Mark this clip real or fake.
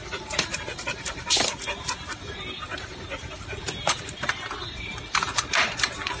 fake